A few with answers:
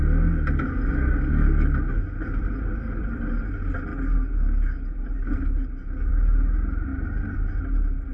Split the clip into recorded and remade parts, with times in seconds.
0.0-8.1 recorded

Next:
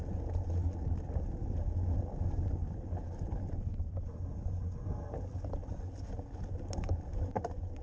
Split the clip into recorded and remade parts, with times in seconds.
0.0-7.8 recorded

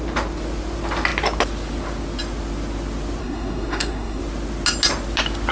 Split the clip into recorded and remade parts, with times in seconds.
0.0-3.2 recorded; 3.2-4.2 remade; 4.2-5.5 recorded

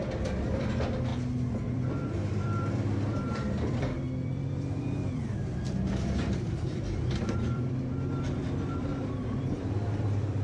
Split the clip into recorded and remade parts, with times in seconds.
0.0-6.7 remade; 6.7-7.2 recorded; 7.2-10.4 remade

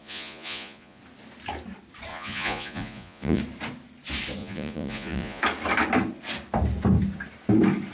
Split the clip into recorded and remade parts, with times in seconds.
0.0-1.0 remade; 1.0-2.1 recorded; 2.1-3.4 remade; 3.4-4.4 recorded; 4.4-5.4 remade; 5.4-7.9 recorded

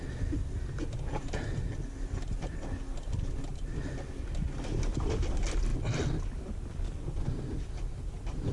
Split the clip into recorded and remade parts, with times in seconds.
0.0-8.5 recorded

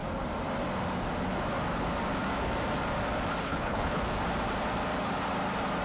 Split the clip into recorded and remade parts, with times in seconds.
0.0-3.4 recorded; 3.4-4.0 remade; 4.0-5.8 recorded

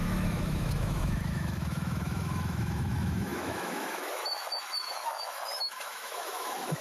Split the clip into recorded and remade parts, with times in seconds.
0.0-6.8 remade